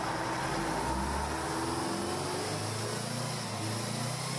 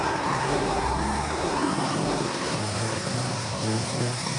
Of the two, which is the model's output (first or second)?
second